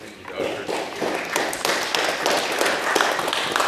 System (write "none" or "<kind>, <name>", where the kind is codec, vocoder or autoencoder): vocoder, BigVGAN v2